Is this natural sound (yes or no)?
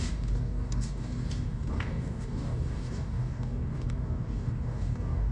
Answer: no